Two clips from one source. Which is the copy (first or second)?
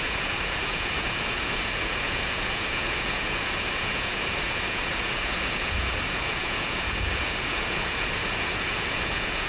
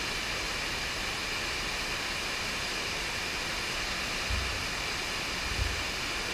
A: first